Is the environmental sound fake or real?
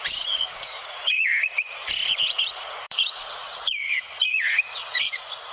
fake